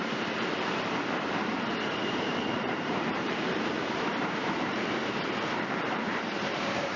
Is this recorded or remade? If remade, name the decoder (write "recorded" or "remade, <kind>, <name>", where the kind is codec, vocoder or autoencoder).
remade, vocoder, BigVGAN v2